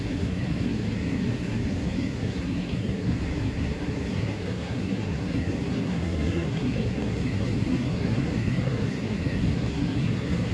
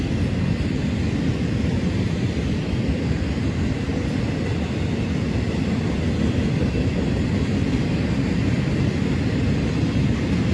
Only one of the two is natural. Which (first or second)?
second